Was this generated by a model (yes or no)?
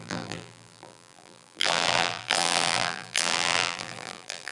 yes